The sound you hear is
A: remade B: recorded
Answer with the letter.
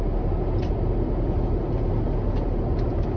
B